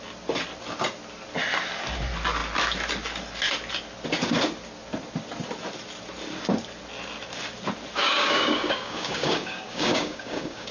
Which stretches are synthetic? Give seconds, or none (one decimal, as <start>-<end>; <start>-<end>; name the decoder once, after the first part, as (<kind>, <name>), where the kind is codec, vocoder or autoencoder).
8.0-10.7 (codec, DAC)